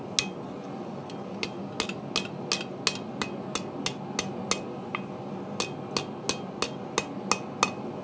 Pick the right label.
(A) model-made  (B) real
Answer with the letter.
B